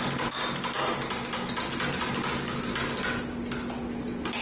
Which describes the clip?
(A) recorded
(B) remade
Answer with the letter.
A